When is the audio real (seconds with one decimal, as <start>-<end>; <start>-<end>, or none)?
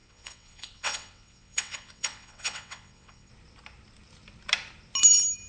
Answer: 3.3-5.5